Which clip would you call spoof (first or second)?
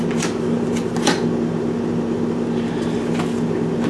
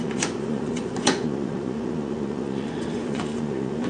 second